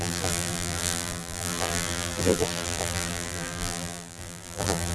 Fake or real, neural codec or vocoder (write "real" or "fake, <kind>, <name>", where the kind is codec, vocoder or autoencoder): fake, vocoder, BigVGAN v2